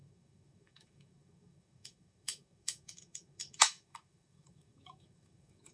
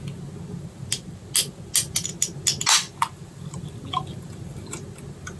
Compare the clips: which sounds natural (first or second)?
second